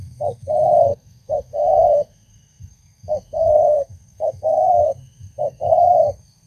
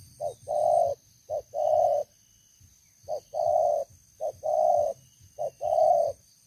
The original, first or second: second